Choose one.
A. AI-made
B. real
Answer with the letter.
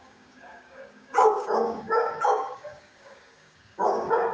A